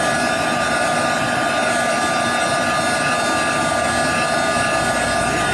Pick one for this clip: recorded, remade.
recorded